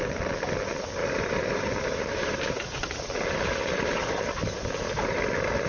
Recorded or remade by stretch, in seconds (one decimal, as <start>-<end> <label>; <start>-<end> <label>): 0.0-1.0 recorded; 1.0-2.6 remade; 2.6-5.7 recorded